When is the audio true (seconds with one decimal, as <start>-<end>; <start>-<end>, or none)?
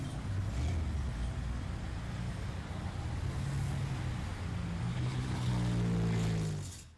0.0-4.9; 5.5-7.0